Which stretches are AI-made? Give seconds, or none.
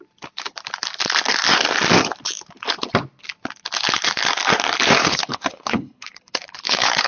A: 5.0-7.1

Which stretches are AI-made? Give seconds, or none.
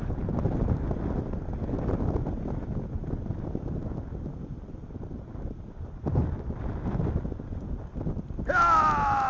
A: none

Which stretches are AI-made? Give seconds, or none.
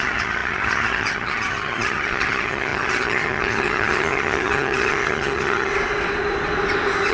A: 0.0-5.7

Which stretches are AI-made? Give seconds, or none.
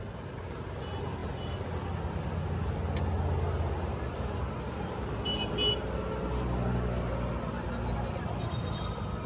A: none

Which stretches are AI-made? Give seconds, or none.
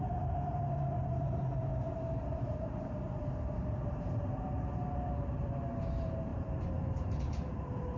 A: 0.0-8.0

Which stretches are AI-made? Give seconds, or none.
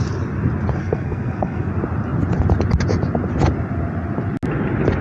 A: 0.8-1.7